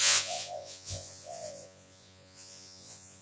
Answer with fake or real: fake